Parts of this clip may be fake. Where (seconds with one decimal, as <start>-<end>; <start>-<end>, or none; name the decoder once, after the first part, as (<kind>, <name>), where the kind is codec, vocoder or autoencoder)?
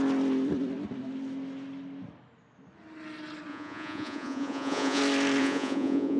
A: 3.5-5.0 (vocoder, Vocos); 5.4-6.2